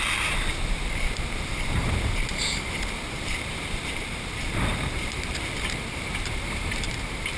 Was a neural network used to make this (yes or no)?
yes